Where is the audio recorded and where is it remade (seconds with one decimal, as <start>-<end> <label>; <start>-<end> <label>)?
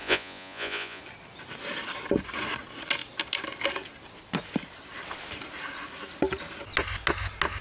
0.0-1.0 remade; 1.0-7.6 recorded